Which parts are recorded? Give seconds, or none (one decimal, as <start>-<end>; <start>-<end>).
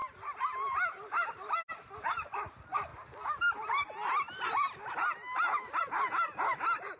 0.0-7.0